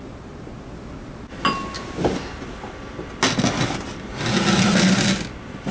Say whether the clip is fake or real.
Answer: real